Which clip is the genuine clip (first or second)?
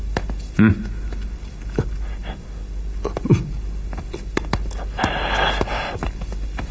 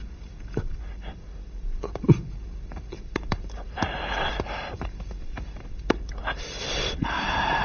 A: first